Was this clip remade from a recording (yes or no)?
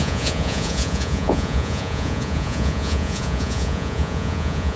yes